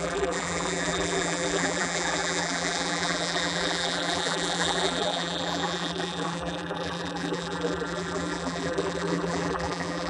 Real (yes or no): no